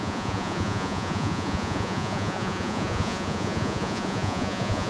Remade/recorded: remade